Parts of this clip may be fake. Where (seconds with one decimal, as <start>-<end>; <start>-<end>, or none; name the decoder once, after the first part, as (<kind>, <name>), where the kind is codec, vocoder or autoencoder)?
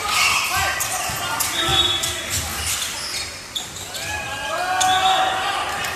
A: none